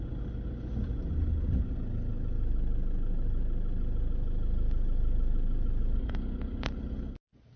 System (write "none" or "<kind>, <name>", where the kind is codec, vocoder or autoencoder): none